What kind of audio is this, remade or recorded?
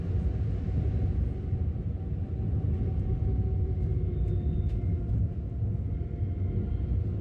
recorded